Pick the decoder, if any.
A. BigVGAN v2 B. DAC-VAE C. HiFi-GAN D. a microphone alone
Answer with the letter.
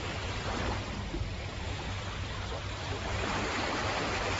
D